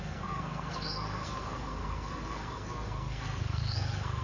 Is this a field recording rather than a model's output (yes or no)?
no